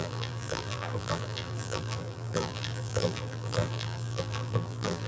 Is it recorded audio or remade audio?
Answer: remade